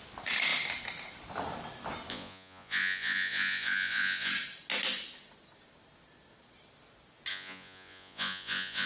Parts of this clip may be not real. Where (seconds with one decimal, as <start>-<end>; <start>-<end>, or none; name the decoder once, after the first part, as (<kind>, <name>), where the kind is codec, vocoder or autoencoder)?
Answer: 2.1-4.3 (vocoder, Vocos); 7.3-8.9